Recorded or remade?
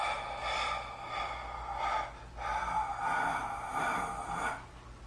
recorded